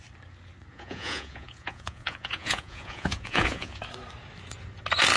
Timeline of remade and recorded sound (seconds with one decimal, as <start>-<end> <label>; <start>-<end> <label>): 0.0-0.7 recorded; 0.7-3.8 remade; 3.8-5.2 recorded